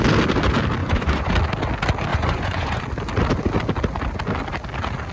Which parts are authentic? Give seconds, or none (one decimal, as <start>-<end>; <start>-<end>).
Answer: 0.0-0.8; 1.3-2.1; 2.8-5.1